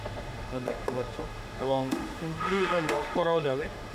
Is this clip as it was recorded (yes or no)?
no